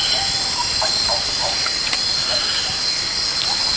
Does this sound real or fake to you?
real